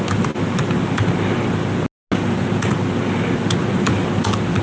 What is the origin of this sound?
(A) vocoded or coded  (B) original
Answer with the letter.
B